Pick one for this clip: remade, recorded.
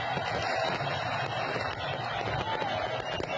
recorded